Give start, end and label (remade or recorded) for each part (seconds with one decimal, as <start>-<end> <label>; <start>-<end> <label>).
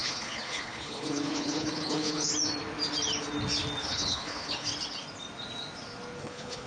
0.0-2.3 remade; 2.3-3.8 recorded; 3.8-4.7 remade; 4.7-6.2 recorded; 6.2-6.7 remade